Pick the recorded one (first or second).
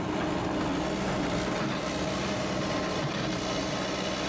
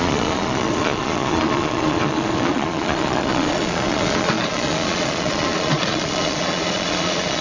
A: first